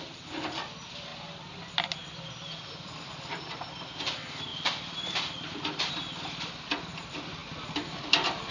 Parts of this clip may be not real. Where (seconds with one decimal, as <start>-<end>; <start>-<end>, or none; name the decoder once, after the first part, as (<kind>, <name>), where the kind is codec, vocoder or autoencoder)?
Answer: 0.0-1.1 (vocoder, BigVGAN v2); 2.3-8.5